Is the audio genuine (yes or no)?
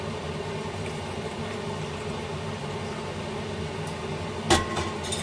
yes